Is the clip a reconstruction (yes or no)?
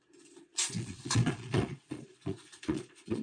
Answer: yes